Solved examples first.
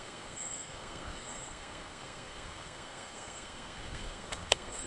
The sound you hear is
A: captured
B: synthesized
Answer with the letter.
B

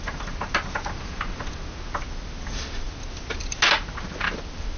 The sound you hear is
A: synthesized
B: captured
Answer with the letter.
B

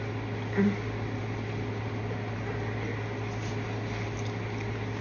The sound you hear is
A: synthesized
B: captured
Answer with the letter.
B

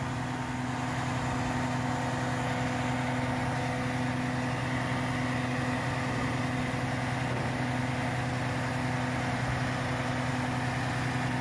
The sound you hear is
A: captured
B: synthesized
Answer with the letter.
A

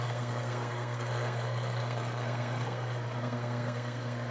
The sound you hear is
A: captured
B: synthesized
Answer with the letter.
B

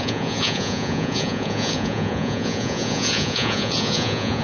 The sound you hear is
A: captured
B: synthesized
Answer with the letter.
B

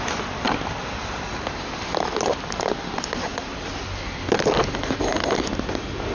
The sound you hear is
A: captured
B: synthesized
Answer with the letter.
A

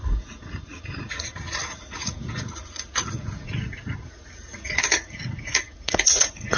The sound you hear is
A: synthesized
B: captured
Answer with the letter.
A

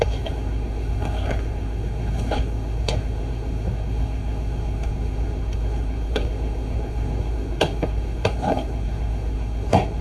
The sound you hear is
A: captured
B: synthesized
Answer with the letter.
B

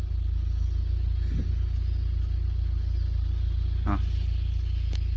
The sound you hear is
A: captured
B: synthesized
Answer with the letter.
A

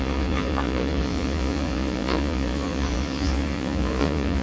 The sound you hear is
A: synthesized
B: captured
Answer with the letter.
A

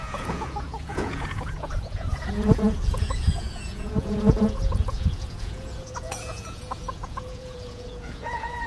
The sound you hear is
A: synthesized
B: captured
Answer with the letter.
A